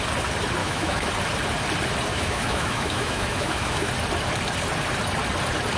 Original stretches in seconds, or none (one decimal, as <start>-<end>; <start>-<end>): 0.0-0.6; 1.1-2.1; 3.9-5.8